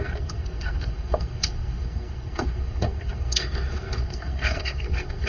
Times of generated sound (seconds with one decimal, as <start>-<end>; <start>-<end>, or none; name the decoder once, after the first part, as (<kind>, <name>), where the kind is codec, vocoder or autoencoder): 0.0-5.3 (codec, SNAC)